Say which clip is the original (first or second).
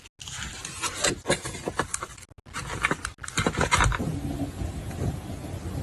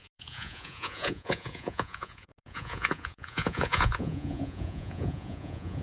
first